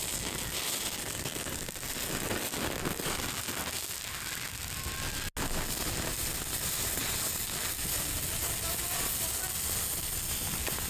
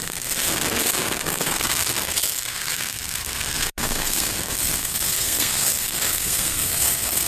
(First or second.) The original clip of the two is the first